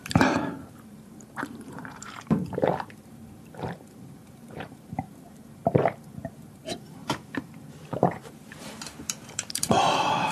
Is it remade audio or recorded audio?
remade